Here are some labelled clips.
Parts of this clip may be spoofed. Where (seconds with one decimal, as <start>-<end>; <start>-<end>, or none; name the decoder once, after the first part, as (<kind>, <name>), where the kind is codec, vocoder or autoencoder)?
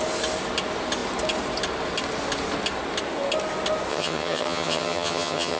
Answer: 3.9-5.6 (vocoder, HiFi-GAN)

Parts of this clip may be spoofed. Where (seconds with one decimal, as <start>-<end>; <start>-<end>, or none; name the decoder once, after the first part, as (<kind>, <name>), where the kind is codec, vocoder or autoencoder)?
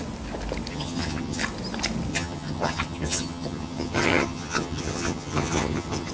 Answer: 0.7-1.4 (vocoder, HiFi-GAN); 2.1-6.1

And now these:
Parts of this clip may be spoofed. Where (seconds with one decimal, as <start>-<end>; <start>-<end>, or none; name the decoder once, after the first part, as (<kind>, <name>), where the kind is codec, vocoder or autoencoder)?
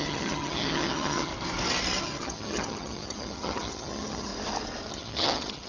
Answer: 0.0-1.3 (vocoder, HiFi-GAN); 2.0-4.3; 4.9-5.7